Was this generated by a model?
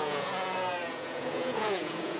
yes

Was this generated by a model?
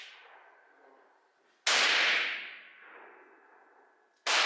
no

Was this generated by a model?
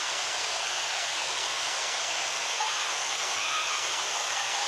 yes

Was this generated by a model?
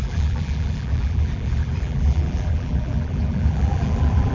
yes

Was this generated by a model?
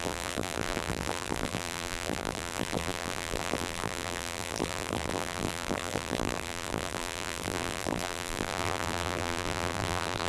yes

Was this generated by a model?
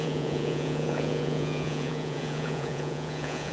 yes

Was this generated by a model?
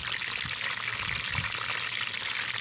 no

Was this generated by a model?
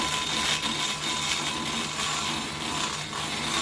no